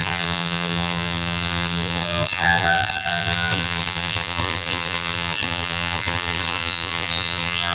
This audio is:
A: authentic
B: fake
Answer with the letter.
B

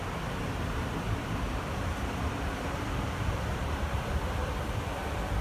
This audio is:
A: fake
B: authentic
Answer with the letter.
A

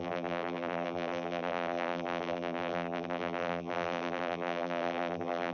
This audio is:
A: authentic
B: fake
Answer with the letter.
B